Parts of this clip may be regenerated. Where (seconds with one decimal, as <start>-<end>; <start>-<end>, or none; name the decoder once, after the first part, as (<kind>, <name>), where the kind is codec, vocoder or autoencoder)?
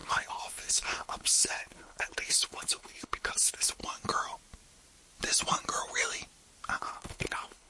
0.0-3.8 (codec, HILCodec); 6.8-7.7